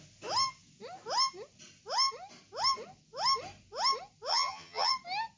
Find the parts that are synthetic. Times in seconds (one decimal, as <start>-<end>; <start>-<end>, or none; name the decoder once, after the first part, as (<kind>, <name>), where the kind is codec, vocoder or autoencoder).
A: 4.3-4.9 (vocoder, HiFi-GAN)